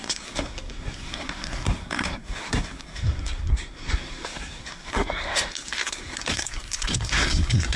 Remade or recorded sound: remade